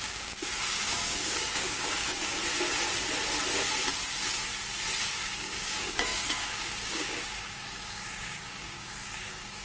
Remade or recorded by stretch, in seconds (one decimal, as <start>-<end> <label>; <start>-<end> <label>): 0.0-2.4 remade; 2.4-5.0 recorded; 5.0-9.6 remade